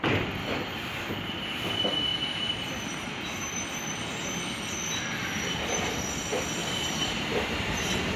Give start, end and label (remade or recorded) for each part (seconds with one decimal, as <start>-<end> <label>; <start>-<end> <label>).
0.0-6.6 recorded; 6.6-8.2 remade

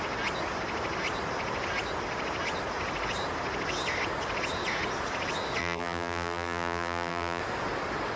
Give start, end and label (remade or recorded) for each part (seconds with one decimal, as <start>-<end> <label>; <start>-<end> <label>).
0.0-5.6 recorded; 5.6-7.4 remade; 7.4-8.2 recorded

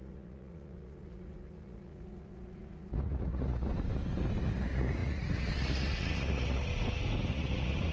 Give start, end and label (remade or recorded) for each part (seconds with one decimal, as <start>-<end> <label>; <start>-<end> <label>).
0.0-3.7 remade; 3.7-4.4 recorded; 4.4-6.7 remade; 6.7-7.3 recorded; 7.3-7.9 remade

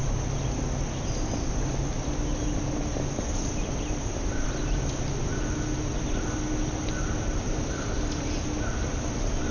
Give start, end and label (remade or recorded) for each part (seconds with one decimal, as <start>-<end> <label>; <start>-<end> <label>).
0.0-9.5 recorded

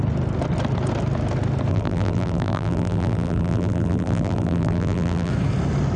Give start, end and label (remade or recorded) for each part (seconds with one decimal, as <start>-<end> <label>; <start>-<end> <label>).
0.0-1.7 recorded; 1.7-5.3 remade; 5.3-6.0 recorded

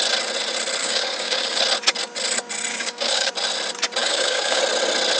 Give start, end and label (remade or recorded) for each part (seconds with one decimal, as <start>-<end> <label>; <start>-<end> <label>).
0.0-0.8 recorded; 0.8-1.6 remade; 1.6-2.7 recorded; 2.7-3.3 remade; 3.3-4.0 recorded; 4.0-4.6 remade; 4.6-5.2 recorded